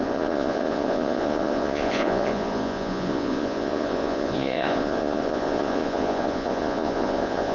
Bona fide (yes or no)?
no